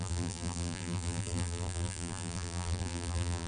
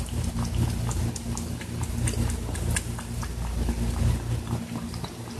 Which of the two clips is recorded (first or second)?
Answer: second